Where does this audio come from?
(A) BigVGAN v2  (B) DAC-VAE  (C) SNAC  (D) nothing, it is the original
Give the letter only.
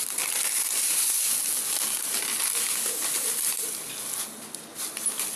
D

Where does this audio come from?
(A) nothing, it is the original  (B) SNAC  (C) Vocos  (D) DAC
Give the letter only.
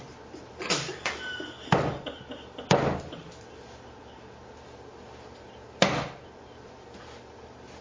A